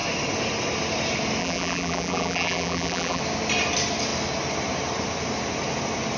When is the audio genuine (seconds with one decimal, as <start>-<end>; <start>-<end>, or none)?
0.0-1.4; 3.2-6.2